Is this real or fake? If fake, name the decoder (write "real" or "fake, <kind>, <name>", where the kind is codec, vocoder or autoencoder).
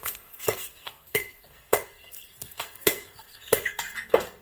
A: fake, codec, SNAC